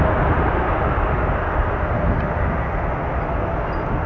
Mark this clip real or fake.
real